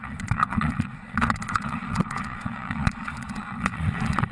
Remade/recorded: remade